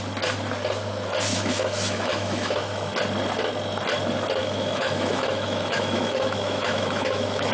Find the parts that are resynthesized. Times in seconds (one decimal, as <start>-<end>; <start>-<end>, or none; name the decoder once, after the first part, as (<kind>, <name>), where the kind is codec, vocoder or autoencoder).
1.3-2.9 (autoencoder, DAC-VAE); 4.4-7.5

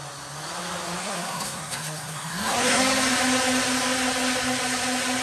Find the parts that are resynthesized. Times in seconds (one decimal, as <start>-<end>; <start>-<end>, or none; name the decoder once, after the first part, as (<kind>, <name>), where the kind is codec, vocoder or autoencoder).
1.0-2.8 (codec, SNAC)

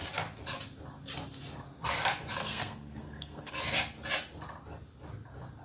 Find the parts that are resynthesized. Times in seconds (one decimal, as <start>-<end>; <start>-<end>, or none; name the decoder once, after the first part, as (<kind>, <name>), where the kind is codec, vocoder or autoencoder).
2.4-3.5 (codec, SNAC)